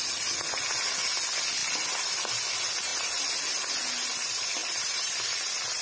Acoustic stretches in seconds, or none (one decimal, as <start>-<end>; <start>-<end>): 0.0-4.6; 5.2-5.8

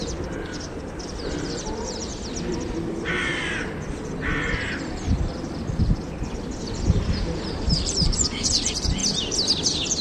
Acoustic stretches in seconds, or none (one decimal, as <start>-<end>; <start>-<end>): 9.0-10.0

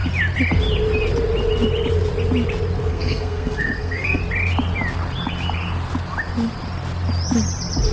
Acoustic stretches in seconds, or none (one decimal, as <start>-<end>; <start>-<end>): 0.0-2.9; 4.2-7.9

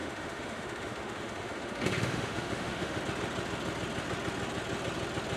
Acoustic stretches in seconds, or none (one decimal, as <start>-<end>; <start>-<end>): 3.0-5.4

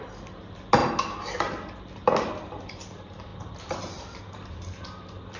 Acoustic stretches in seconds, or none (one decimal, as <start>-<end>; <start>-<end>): 0.0-5.4

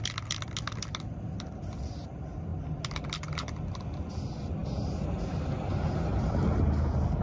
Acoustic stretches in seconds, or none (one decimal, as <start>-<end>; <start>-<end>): 0.0-7.2

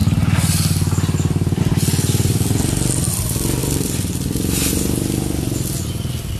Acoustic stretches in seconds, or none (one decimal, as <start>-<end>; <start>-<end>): 1.6-3.6; 4.7-6.4